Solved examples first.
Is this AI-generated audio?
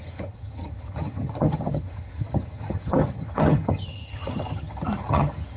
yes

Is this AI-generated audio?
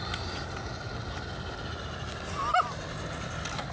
no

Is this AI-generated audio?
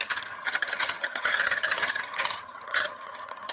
yes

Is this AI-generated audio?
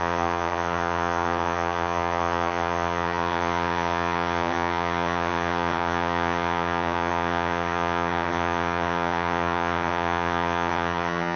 yes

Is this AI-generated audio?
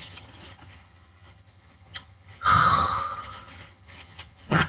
yes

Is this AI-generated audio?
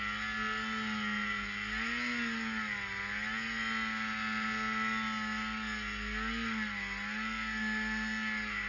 no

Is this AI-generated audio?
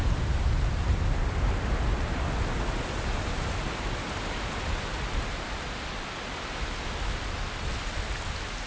no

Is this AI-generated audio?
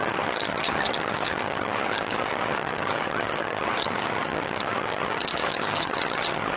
yes